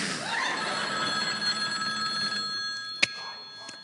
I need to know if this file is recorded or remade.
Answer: recorded